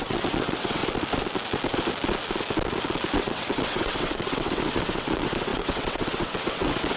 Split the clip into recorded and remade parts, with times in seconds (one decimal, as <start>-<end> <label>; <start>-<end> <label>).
0.0-0.8 remade; 0.8-3.2 recorded; 3.2-7.0 remade